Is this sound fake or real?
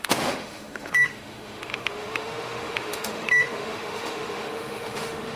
fake